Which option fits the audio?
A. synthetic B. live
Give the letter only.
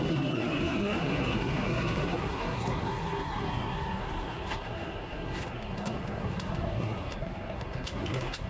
A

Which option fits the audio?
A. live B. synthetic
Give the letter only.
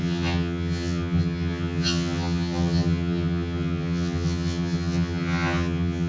B